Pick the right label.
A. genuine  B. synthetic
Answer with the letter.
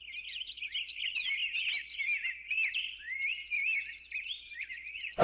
A